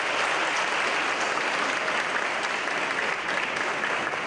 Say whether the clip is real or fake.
real